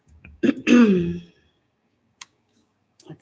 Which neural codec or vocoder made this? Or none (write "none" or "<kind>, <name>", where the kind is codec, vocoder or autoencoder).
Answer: codec, DAC